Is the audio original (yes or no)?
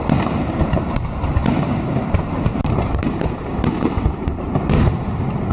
no